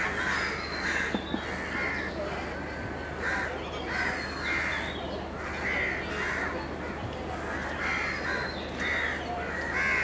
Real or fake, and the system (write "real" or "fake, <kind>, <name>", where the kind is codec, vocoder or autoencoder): real